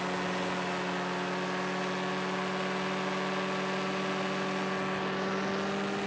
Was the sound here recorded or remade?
recorded